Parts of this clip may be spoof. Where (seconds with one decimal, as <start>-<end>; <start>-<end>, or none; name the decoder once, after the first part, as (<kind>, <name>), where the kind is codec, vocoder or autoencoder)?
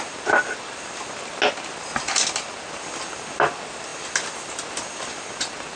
none